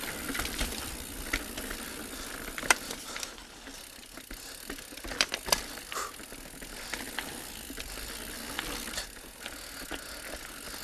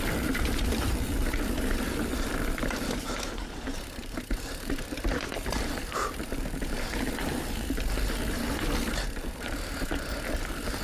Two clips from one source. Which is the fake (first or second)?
second